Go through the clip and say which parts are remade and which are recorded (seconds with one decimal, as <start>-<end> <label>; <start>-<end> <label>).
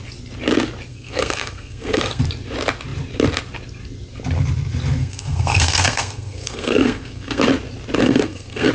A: 0.0-0.9 recorded; 0.9-2.2 remade; 2.2-5.0 recorded; 5.0-7.4 remade; 7.4-8.0 recorded; 8.0-8.7 remade